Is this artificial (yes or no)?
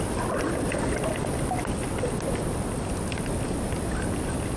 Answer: no